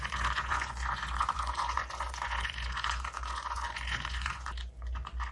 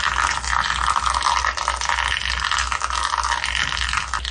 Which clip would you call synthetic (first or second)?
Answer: first